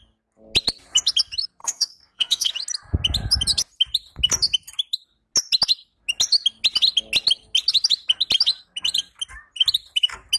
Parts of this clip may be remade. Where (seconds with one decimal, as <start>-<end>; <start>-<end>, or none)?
1.6-2.5